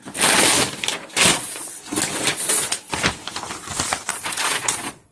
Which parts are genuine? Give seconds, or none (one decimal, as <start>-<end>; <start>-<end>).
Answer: 0.0-1.3; 1.8-2.3; 2.9-4.1